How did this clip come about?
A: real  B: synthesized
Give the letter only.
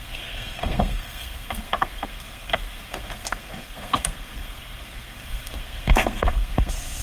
B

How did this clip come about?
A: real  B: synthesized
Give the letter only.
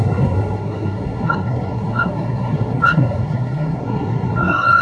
B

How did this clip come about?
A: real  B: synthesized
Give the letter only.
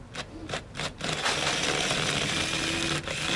A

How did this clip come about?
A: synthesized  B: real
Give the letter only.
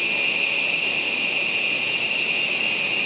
B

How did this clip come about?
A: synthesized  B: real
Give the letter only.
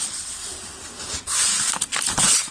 B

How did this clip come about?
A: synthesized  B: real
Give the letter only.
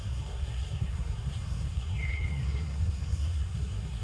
A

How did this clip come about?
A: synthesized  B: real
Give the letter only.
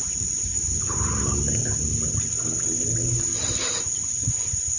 B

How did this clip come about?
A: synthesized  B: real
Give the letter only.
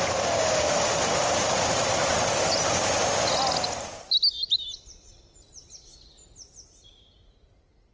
B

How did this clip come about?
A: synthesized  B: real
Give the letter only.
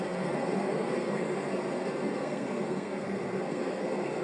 A